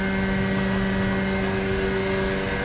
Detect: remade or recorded recorded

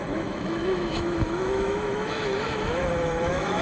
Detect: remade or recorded remade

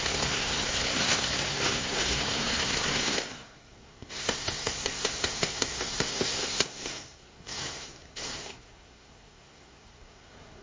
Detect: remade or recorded remade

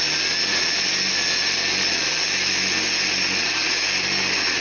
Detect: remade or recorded recorded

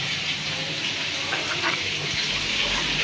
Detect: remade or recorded remade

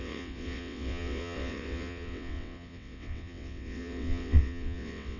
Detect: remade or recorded remade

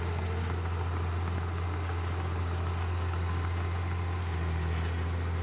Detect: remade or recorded recorded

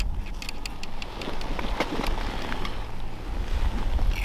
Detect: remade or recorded recorded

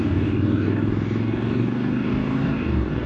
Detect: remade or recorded remade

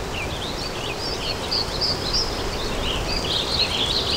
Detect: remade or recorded recorded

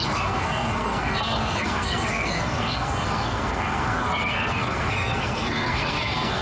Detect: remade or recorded remade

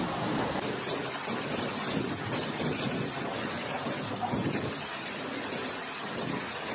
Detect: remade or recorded recorded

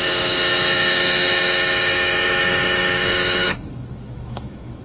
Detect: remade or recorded remade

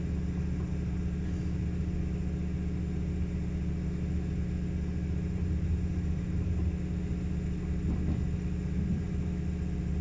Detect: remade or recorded recorded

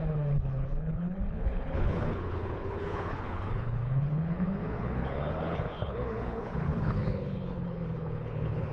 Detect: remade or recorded remade